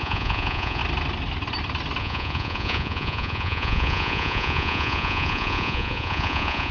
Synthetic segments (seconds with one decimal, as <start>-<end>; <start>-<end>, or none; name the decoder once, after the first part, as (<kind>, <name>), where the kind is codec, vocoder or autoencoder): 0.0-0.8 (vocoder, Vocos); 2.0-6.7